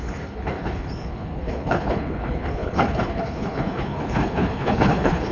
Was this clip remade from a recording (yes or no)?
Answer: yes